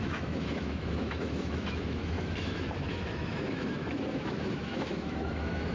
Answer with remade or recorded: remade